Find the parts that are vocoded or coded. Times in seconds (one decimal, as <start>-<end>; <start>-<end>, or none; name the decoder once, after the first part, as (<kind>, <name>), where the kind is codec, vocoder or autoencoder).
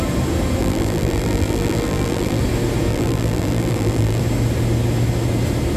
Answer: 0.6-2.4 (vocoder, BigVGAN v2); 2.9-4.2